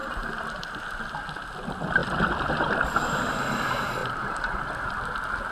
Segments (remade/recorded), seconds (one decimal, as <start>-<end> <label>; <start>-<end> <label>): 0.0-0.8 remade; 0.8-4.0 recorded; 4.0-4.6 remade; 4.6-5.5 recorded